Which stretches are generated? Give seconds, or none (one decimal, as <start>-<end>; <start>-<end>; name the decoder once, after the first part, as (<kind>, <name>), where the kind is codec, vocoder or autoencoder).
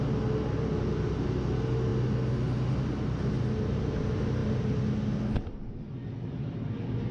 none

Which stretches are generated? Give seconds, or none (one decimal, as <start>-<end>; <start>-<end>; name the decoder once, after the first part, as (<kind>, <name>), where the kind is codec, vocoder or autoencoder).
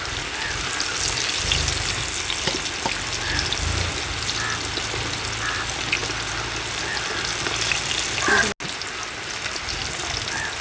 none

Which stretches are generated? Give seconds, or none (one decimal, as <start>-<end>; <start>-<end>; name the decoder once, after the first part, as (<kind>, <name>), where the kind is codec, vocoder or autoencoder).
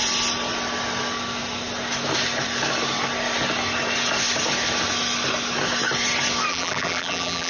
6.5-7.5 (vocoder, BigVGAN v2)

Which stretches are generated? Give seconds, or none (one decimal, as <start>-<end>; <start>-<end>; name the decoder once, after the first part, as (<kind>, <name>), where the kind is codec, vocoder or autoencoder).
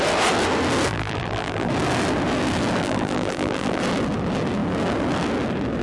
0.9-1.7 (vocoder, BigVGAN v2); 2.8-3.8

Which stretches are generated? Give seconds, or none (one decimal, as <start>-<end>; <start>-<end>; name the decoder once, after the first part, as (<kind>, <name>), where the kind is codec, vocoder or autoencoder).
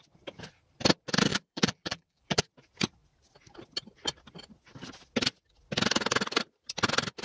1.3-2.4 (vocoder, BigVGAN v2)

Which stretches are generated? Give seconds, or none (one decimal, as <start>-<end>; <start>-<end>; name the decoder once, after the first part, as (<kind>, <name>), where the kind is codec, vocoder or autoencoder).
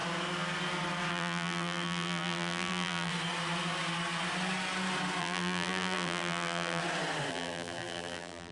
1.1-3.1 (vocoder, BigVGAN v2); 5.2-6.8; 7.3-8.5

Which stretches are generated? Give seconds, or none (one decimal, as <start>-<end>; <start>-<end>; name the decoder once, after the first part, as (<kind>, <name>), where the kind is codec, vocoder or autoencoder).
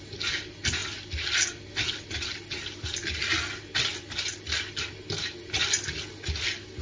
none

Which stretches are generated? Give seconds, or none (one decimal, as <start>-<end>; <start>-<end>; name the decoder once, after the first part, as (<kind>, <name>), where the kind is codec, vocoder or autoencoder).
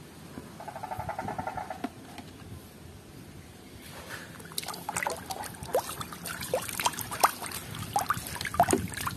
5.7-7.8 (vocoder, BigVGAN v2)